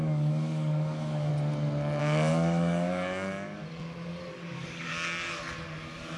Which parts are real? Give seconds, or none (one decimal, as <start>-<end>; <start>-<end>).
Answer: 1.3-2.0; 3.6-4.3; 4.9-6.2